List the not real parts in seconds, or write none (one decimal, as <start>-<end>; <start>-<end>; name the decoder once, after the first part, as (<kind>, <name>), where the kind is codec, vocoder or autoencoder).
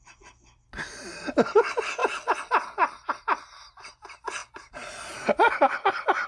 none